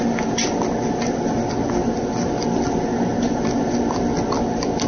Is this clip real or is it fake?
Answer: real